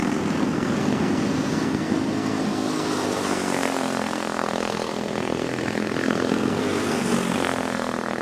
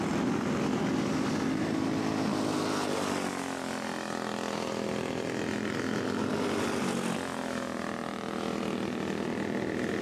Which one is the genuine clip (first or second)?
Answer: second